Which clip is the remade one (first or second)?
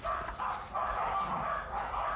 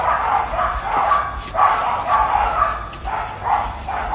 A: first